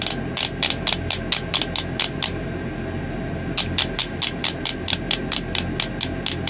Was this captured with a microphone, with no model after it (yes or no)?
yes